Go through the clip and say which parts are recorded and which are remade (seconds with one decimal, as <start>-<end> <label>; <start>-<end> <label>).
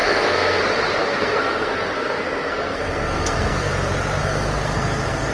0.0-0.6 remade; 0.6-1.0 recorded; 1.0-3.7 remade; 3.7-4.2 recorded; 4.2-5.3 remade